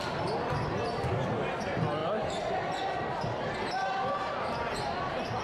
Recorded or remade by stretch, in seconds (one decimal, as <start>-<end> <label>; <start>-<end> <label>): 0.0-5.4 recorded